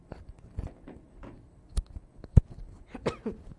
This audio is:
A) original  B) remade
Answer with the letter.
A